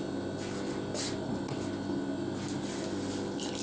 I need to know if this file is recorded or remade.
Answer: recorded